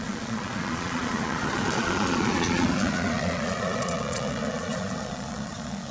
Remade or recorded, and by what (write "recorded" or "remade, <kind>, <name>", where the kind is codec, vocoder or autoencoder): remade, vocoder, Vocos